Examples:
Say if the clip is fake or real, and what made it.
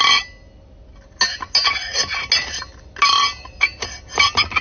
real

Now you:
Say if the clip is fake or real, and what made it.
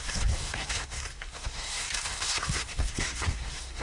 fake, codec, SNAC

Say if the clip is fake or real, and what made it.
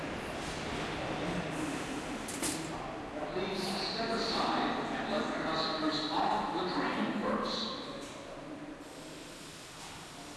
real